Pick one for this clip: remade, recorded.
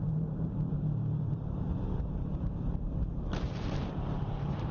remade